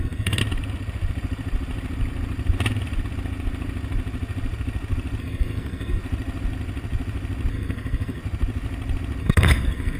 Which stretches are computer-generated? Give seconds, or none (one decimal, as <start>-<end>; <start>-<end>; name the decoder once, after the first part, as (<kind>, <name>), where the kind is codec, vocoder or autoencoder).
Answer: 0.0-0.4 (codec, SNAC); 5.2-6.0; 7.5-8.2; 9.2-10.0